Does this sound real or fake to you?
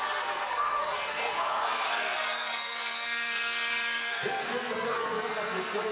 fake